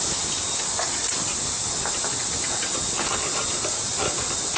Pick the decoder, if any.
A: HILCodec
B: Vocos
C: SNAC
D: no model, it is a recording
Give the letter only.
D